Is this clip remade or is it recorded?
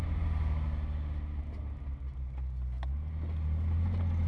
recorded